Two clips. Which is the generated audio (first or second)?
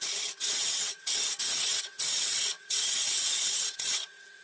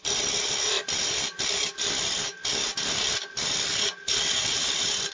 first